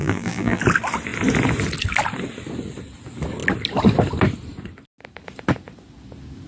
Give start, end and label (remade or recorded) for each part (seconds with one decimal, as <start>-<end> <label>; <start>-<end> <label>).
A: 0.0-0.6 remade; 0.6-6.5 recorded